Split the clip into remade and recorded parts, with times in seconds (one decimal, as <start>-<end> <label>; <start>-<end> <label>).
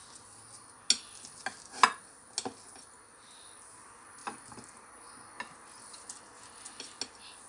0.0-7.5 recorded